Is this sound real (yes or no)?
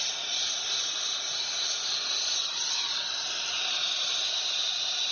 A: yes